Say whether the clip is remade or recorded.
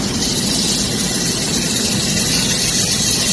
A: recorded